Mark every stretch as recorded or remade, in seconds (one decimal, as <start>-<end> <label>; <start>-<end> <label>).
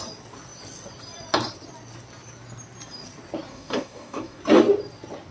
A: 0.0-3.5 recorded; 3.5-4.4 remade; 4.4-5.3 recorded